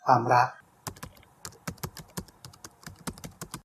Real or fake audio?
real